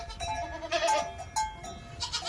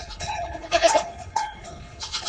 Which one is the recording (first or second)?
first